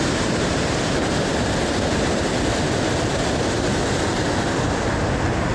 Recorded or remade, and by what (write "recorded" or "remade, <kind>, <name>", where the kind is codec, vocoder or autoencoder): recorded